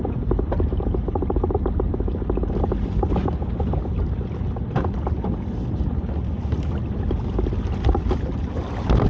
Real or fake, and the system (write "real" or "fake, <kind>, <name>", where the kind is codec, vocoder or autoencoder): real